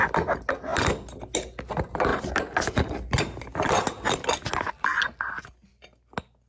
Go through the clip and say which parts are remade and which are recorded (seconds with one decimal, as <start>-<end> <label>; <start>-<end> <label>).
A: 0.0-6.5 recorded

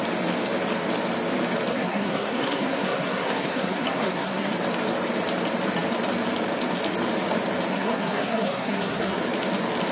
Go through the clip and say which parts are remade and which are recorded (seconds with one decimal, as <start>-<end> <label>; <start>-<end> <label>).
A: 0.0-1.7 recorded; 1.7-4.5 remade; 4.5-7.7 recorded; 7.7-9.2 remade; 9.2-9.9 recorded